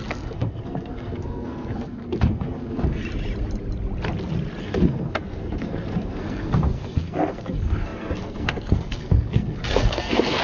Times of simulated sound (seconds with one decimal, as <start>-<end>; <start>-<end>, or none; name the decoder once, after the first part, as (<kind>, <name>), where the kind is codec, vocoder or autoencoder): 0.0-3.0 (codec, SNAC); 4.6-10.4